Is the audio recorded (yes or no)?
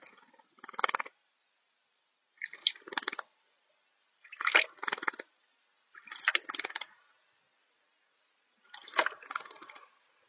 yes